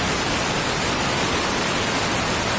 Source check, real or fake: real